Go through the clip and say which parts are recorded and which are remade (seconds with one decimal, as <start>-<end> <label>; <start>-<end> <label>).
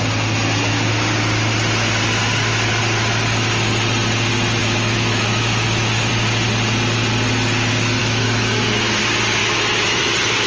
0.0-4.6 recorded; 4.6-6.1 remade; 6.1-8.0 recorded; 8.0-9.0 remade; 9.0-9.4 recorded; 9.4-10.0 remade; 10.0-10.5 recorded